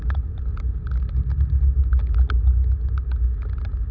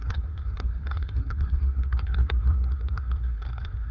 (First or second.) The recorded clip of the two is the first